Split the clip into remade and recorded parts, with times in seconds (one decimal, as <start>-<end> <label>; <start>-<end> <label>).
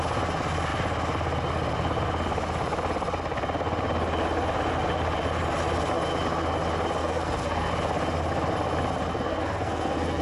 0.0-7.0 recorded; 7.0-7.7 remade; 7.7-9.1 recorded; 9.1-10.2 remade